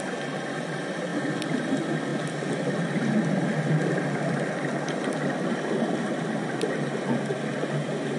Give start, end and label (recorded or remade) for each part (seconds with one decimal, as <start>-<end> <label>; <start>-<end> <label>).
0.0-8.2 recorded